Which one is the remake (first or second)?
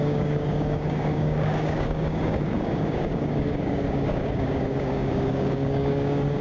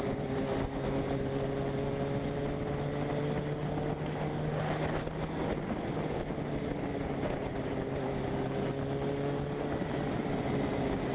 first